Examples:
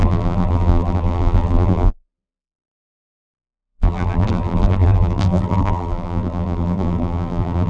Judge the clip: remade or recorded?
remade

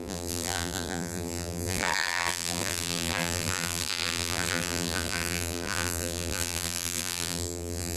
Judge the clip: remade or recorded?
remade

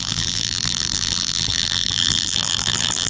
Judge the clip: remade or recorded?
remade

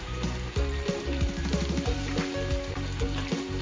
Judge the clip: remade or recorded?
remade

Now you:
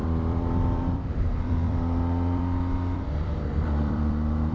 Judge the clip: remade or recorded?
remade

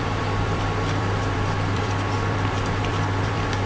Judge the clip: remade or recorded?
remade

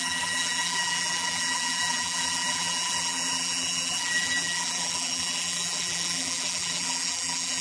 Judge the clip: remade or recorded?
remade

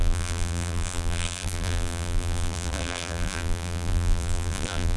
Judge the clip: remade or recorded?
remade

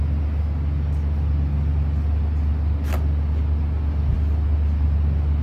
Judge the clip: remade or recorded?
recorded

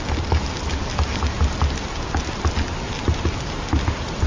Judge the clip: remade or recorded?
recorded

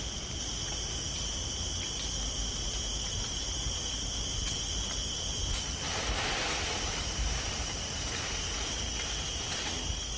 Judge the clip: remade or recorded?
remade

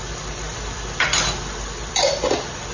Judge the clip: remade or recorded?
recorded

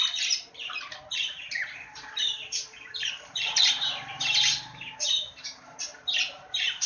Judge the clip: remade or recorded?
remade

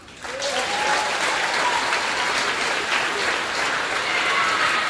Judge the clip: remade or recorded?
recorded